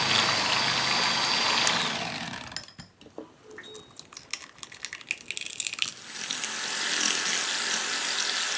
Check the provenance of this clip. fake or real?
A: real